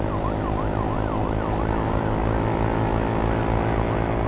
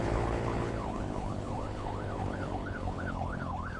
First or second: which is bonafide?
first